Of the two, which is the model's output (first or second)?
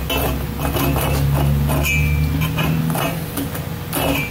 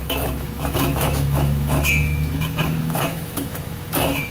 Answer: second